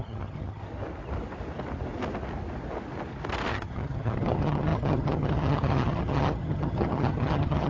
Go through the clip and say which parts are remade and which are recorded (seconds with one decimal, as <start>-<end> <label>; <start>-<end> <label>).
0.0-0.6 remade; 0.6-3.5 recorded; 3.5-7.7 remade